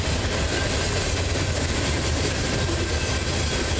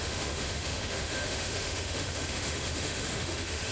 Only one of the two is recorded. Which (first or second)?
first